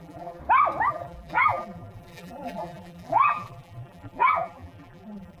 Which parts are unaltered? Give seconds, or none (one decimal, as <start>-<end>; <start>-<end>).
0.4-0.9

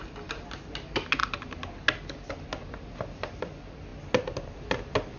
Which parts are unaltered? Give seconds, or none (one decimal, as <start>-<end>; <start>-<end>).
0.0-5.2

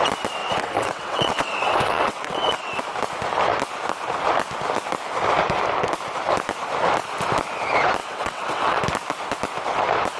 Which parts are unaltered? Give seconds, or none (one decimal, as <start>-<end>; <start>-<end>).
0.0-0.4; 2.8-8.0; 8.8-10.2

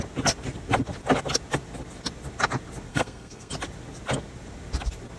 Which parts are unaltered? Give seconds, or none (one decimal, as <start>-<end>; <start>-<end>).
0.0-2.9; 3.5-5.2

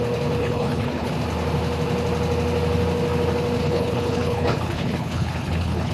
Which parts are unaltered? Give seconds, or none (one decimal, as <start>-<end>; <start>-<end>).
0.0-0.4; 1.1-3.6

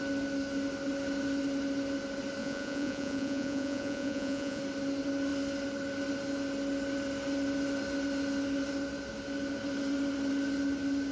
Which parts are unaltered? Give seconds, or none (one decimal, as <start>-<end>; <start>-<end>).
0.0-2.4; 4.6-11.1

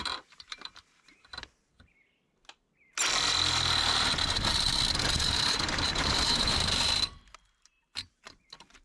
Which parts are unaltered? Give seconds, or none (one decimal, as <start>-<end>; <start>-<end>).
1.7-5.1

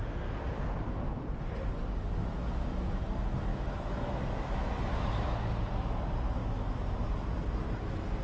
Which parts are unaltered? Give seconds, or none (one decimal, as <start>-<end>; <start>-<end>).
0.0-3.5; 6.0-6.4; 7.1-8.2